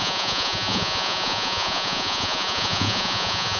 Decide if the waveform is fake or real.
fake